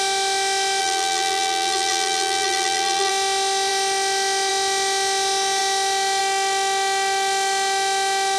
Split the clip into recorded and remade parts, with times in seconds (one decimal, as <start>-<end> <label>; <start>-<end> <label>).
0.0-0.8 recorded; 0.8-3.1 remade; 3.1-8.4 recorded